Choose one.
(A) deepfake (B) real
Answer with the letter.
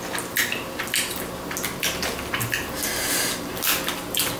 B